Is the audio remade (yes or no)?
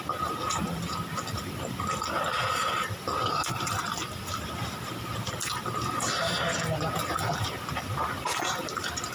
yes